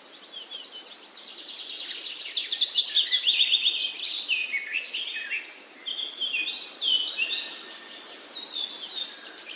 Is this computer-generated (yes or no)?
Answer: no